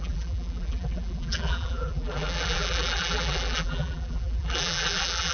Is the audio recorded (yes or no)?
no